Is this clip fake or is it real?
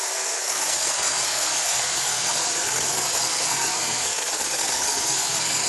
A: fake